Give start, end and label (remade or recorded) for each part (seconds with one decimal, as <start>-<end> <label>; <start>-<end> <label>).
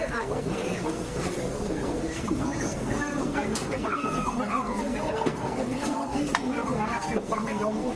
0.0-8.0 remade